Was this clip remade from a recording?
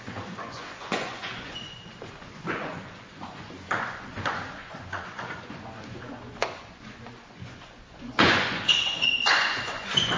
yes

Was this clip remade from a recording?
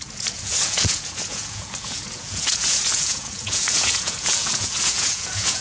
yes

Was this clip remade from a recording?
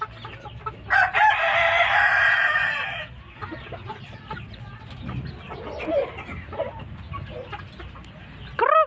no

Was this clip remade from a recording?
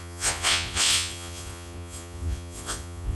yes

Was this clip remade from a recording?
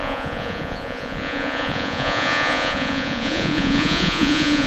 yes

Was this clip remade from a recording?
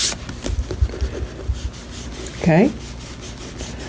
no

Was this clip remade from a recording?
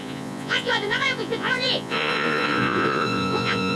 yes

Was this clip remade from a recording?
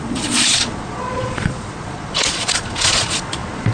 yes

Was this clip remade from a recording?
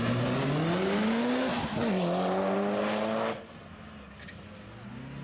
no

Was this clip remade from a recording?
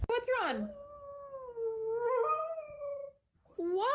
no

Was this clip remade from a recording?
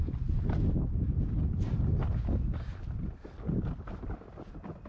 no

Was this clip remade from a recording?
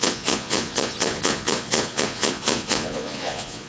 yes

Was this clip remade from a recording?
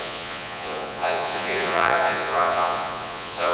yes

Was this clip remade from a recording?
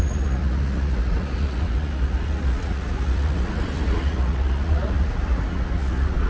yes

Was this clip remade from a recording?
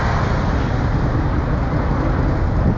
no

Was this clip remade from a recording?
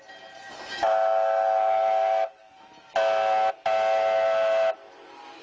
no